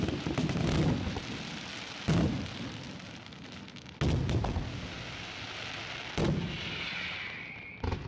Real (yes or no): yes